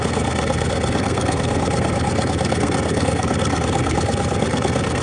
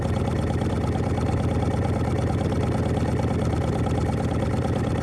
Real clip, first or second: second